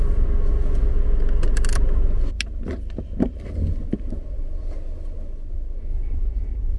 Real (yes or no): yes